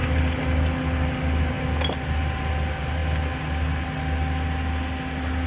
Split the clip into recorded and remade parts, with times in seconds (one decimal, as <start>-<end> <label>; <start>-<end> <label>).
0.0-5.5 recorded